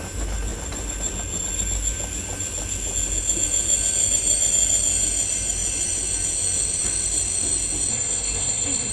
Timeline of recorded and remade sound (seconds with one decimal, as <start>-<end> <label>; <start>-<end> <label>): 0.0-7.9 recorded; 7.9-8.9 remade

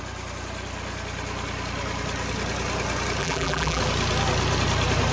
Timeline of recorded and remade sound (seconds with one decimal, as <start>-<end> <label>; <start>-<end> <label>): 0.0-3.2 recorded; 3.2-3.8 remade; 3.8-5.1 recorded